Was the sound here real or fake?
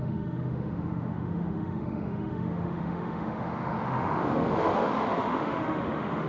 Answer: fake